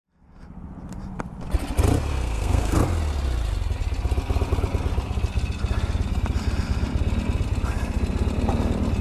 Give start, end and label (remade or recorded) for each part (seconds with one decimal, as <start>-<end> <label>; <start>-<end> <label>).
0.0-2.1 recorded; 2.1-2.8 remade; 2.8-9.0 recorded